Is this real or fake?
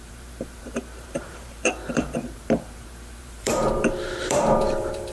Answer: fake